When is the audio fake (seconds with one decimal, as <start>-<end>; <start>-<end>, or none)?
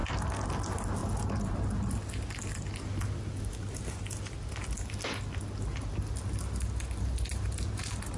none